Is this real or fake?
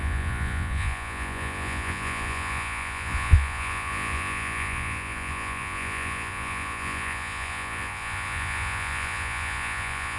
fake